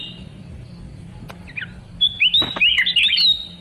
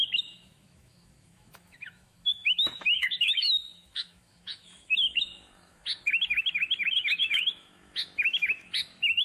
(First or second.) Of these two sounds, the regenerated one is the second